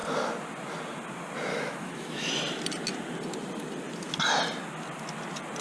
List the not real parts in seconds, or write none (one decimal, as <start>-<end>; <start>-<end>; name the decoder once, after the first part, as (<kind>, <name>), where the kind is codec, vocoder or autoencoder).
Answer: 1.5-2.3 (autoencoder, DAC-VAE)